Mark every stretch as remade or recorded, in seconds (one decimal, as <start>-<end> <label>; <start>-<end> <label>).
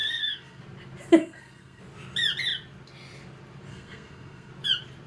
0.0-0.6 remade; 0.6-1.2 recorded; 1.2-1.8 remade; 1.8-3.7 recorded; 3.7-4.5 remade; 4.5-5.1 recorded